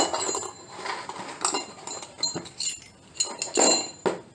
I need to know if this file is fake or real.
real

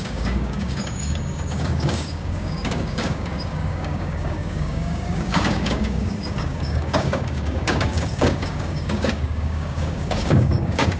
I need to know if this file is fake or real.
fake